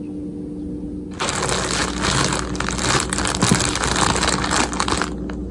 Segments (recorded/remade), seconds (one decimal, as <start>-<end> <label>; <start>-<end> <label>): 0.0-5.5 recorded